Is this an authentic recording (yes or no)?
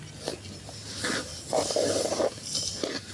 yes